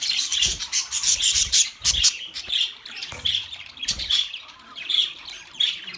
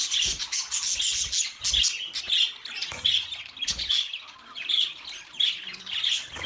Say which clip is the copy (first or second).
first